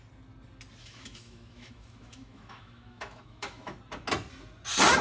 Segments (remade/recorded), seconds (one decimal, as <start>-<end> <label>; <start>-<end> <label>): 0.0-0.8 recorded; 0.8-3.8 remade; 3.8-5.0 recorded